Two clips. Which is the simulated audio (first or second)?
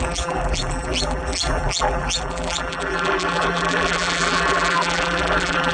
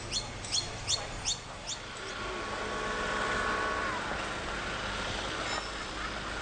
first